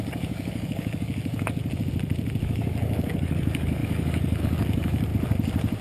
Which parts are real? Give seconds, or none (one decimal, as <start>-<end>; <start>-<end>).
1.6-2.4; 5.1-5.8